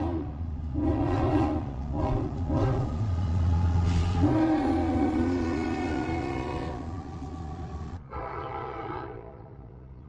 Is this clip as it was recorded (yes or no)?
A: no